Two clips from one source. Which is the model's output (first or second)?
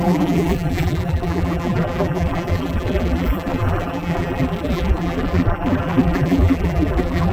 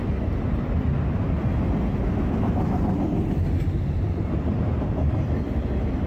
first